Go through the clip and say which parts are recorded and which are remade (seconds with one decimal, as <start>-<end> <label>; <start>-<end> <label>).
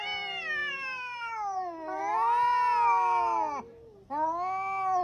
0.0-0.6 recorded; 0.6-2.0 remade; 2.0-5.0 recorded